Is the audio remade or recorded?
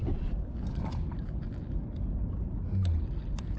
recorded